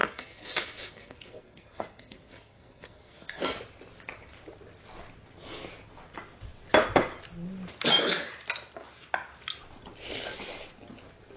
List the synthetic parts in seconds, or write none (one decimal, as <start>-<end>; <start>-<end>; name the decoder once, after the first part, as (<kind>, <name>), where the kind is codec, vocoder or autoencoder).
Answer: 0.0-3.4 (codec, SNAC)

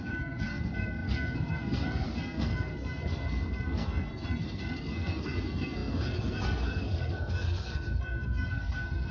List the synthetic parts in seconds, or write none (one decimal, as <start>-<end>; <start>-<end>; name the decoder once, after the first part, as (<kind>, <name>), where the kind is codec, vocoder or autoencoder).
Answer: 0.0-9.1 (codec, SNAC)

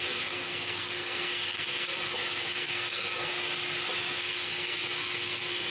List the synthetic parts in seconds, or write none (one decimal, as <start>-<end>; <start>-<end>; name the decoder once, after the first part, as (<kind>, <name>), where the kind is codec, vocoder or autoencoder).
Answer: 0.0-3.3 (codec, SNAC); 4.2-5.7